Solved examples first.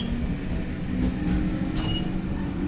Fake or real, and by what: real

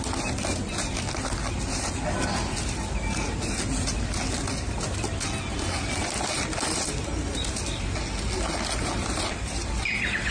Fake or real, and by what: real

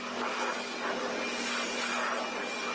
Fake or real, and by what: real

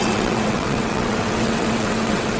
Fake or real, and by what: fake, vocoder, WaveNeXt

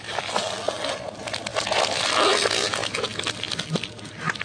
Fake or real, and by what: real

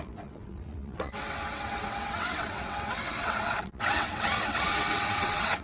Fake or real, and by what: fake, vocoder, WaveNeXt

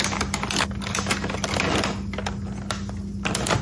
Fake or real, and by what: real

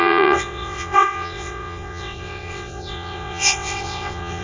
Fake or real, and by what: fake, vocoder, WaveNeXt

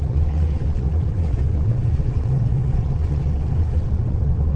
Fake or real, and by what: fake, vocoder, WaveNeXt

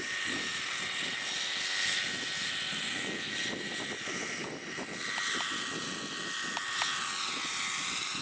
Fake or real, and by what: real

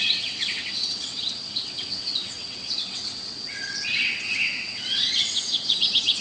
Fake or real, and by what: fake, vocoder, WaveNeXt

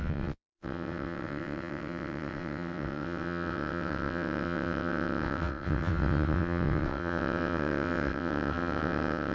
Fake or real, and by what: fake, vocoder, WaveNeXt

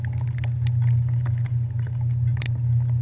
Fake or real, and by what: real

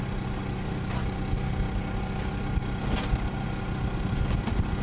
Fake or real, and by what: real